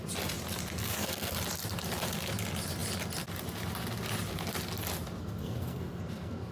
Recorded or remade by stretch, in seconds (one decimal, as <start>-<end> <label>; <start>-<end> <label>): 0.0-0.8 recorded; 0.8-1.3 remade; 1.3-5.2 recorded; 5.2-6.5 remade